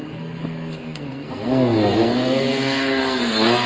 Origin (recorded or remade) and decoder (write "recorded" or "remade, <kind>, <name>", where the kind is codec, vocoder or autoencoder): remade, codec, SNAC